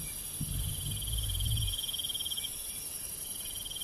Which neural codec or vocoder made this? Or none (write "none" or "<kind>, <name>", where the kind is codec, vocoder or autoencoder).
none